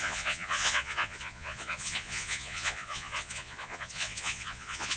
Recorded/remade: remade